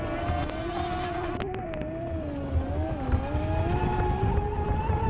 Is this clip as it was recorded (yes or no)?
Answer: yes